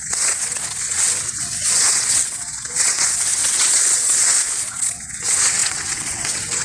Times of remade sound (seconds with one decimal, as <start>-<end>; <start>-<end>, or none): 0.0-6.6